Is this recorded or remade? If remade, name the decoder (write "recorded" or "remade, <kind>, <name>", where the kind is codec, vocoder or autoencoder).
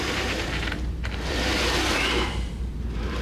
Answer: remade, vocoder, BigVGAN v2